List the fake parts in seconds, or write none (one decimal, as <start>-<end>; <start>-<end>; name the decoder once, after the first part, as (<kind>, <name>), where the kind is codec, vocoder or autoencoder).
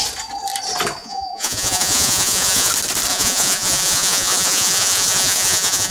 1.0-2.7 (vocoder, Vocos); 3.1-5.9